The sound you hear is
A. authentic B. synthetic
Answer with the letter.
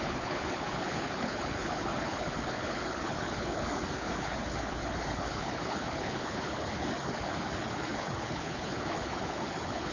B